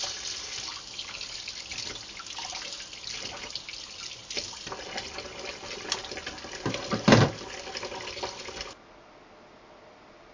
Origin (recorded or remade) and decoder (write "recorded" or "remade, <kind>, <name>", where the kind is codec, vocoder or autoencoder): recorded